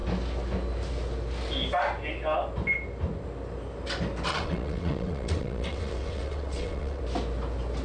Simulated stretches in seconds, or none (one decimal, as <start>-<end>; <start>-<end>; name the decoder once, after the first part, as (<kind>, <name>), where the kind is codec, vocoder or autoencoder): 4.3-7.0 (vocoder, WaveNeXt)